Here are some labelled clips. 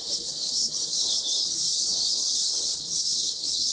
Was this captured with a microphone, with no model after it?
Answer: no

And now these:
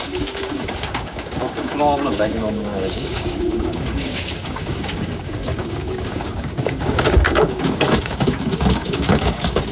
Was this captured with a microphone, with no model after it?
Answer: no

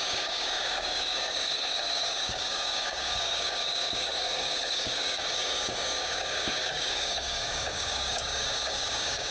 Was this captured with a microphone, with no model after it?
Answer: no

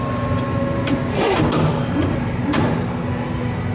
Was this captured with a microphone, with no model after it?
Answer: yes